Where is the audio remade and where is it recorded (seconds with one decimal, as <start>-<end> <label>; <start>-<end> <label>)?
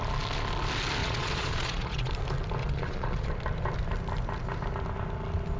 0.0-1.0 recorded; 1.0-2.1 remade; 2.1-2.6 recorded; 2.6-3.3 remade; 3.3-5.6 recorded